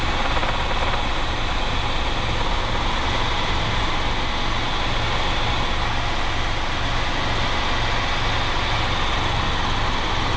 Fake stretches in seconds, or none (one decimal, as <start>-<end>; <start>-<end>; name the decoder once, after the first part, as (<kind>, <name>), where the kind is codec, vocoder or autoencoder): none